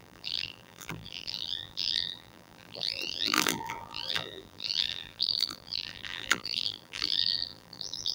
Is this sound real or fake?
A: fake